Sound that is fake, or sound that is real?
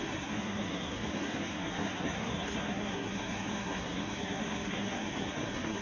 fake